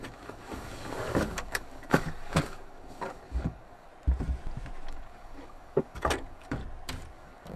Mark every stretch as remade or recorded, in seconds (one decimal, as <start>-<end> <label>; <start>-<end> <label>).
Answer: 0.0-3.9 remade; 3.9-4.9 recorded; 4.9-6.6 remade; 6.6-7.1 recorded; 7.1-7.6 remade